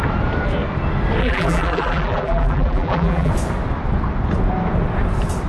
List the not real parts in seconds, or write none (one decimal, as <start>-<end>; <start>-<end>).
1.2-3.3